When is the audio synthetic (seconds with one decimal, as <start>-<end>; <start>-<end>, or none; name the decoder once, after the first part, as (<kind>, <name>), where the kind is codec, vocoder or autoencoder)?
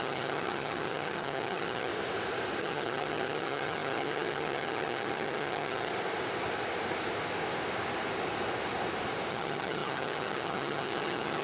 0.0-1.9 (vocoder, HiFi-GAN); 2.6-5.9; 9.3-11.4